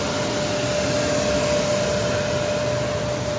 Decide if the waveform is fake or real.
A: real